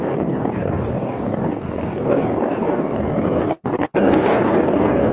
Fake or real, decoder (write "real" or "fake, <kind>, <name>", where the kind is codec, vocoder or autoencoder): fake, codec, DAC